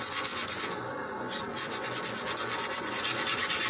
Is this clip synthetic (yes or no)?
yes